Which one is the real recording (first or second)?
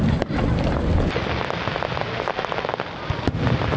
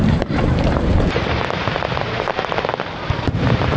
first